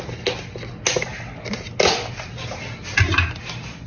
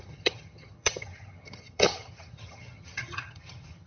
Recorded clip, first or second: first